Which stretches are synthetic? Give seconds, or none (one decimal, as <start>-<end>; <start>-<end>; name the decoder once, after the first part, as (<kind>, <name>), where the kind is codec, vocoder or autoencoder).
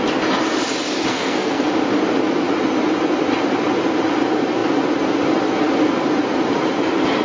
1.1-1.7 (codec, SNAC)